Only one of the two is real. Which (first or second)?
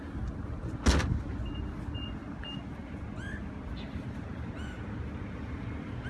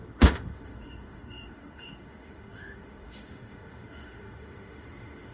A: first